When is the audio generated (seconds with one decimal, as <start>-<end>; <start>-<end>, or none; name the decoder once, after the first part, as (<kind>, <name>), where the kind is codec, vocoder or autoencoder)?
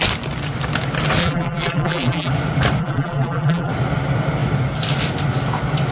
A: 1.2-2.3 (vocoder, BigVGAN v2); 2.8-3.7